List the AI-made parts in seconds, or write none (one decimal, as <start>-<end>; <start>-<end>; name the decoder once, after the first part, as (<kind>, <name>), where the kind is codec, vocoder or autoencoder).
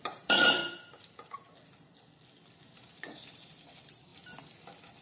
0.0-0.6 (vocoder, BigVGAN v2); 2.6-4.1